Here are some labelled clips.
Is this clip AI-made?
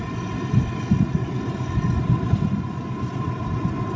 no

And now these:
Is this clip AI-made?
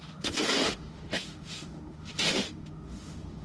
yes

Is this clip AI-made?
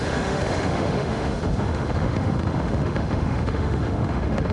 yes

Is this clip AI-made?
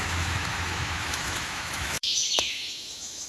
yes